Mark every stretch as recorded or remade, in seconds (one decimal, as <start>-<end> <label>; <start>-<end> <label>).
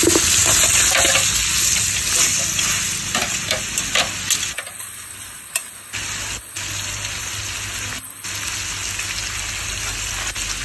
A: 0.0-10.6 recorded